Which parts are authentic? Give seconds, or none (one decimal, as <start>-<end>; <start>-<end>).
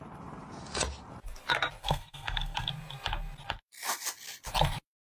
0.0-1.8; 2.7-5.1